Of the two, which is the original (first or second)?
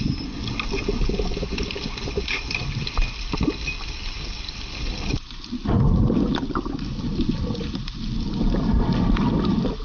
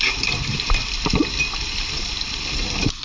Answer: first